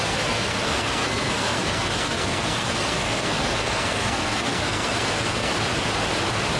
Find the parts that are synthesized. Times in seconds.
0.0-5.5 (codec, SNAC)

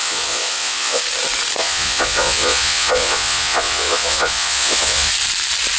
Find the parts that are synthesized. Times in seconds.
0.0-1.0 (vocoder, Vocos); 1.6-5.1

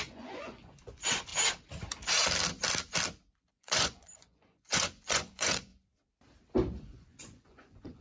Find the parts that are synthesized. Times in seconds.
0.0-1.3 (vocoder, Vocos); 3.5-5.7; 6.8-8.0

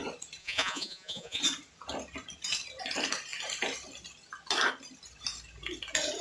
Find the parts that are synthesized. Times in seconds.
0.4-1.4 (vocoder, Vocos)